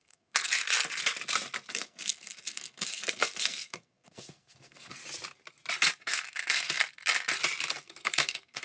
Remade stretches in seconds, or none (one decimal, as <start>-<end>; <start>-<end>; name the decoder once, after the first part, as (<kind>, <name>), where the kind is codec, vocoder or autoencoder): 0.0-0.6 (codec, SNAC); 1.7-5.0; 6.0-6.8; 7.7-8.6